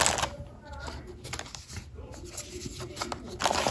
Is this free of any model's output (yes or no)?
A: yes